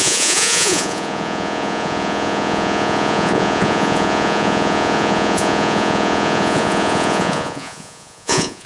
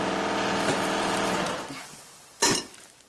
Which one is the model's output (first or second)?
first